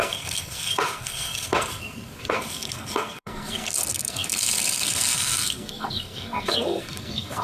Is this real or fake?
fake